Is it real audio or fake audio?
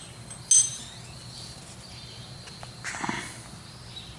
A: real